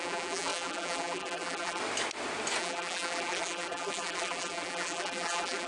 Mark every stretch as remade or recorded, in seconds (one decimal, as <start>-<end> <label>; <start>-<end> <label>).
0.0-1.8 remade; 1.8-2.6 recorded; 2.6-5.7 remade

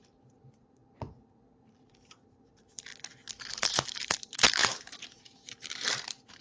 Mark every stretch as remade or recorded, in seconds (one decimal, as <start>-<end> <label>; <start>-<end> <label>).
0.0-0.8 remade; 0.8-1.8 recorded; 1.8-2.9 remade; 2.9-3.5 recorded; 3.5-6.4 remade